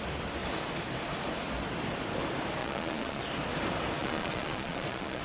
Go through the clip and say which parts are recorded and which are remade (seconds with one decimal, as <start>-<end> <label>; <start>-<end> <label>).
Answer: 0.0-2.6 recorded; 2.6-3.2 remade; 3.2-4.0 recorded; 4.0-5.2 remade